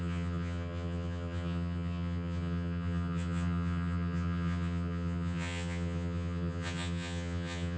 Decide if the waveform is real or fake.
fake